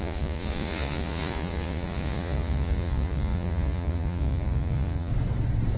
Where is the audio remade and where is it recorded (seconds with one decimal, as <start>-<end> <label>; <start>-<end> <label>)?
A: 0.0-5.1 remade; 5.1-5.8 recorded